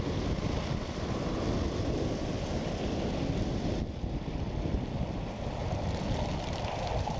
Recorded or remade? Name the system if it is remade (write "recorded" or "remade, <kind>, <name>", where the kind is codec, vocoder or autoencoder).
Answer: recorded